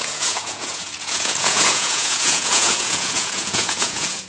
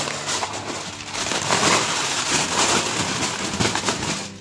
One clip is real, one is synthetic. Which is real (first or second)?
second